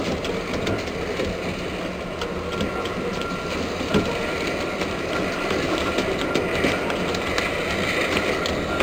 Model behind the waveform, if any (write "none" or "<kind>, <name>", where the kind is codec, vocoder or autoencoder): none